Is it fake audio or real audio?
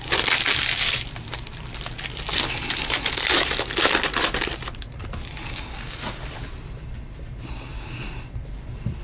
real